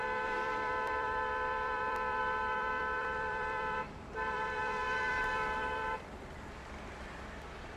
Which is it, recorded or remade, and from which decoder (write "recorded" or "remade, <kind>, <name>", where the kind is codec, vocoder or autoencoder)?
remade, vocoder, BigVGAN v2